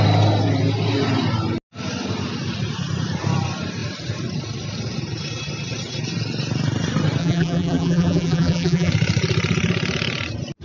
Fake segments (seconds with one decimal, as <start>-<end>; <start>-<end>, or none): 7.2-8.9